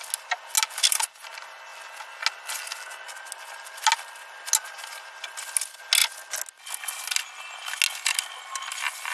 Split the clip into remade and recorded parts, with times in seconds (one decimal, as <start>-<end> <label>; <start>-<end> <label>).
0.0-9.1 recorded